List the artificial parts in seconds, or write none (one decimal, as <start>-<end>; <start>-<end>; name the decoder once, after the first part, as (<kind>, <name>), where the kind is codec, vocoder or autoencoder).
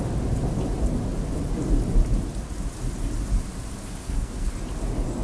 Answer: 4.0-4.5 (codec, SNAC)